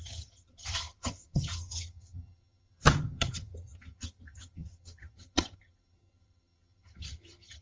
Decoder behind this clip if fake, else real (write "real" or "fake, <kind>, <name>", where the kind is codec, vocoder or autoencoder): fake, vocoder, HiFi-GAN